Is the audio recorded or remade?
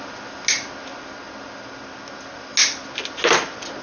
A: recorded